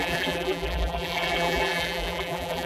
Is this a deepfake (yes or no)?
yes